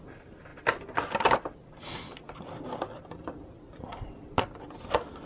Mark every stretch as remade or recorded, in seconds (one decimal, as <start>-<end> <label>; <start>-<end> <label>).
0.0-5.3 recorded